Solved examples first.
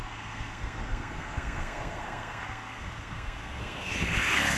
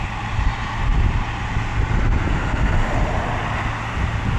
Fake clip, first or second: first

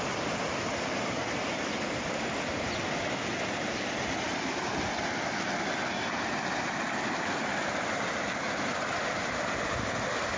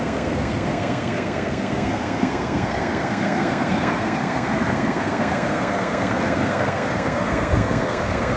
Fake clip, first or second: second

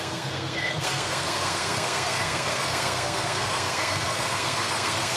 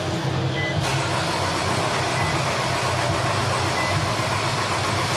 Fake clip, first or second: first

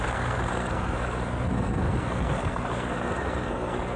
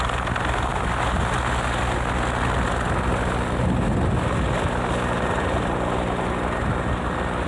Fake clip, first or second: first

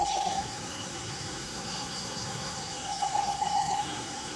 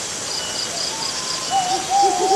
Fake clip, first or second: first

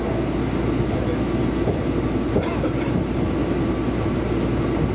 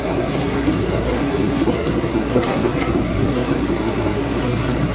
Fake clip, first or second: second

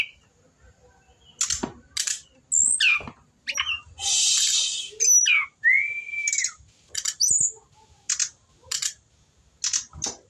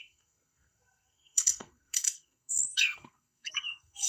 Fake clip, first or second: second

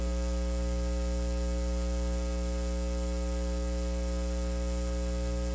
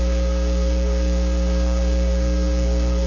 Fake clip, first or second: second